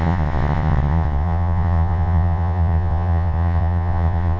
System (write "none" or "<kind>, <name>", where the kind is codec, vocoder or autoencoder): vocoder, Vocos